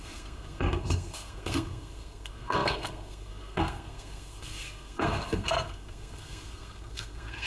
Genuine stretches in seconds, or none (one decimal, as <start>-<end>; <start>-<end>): none